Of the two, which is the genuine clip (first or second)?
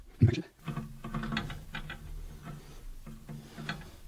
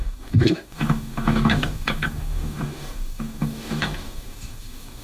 first